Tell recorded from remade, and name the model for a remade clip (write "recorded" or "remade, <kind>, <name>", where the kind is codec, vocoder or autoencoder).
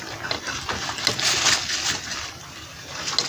recorded